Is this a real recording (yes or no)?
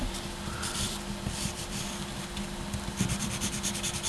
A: no